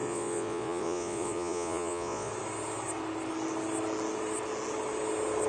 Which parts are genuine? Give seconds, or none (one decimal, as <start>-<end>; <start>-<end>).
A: 2.3-5.5

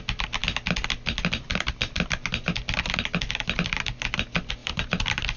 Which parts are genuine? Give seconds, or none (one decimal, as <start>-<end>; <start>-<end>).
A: 0.0-4.6

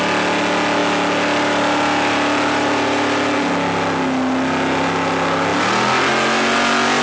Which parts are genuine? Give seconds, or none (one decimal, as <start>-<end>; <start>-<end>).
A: 0.0-7.0